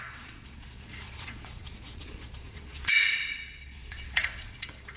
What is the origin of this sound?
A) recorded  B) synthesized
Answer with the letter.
B